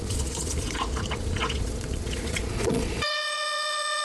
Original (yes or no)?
no